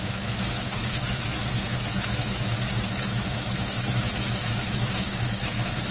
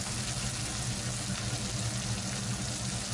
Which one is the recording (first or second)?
second